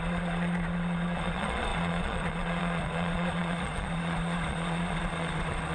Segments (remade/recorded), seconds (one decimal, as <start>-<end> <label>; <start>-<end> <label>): 0.0-5.7 remade